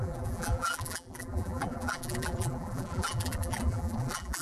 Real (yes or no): no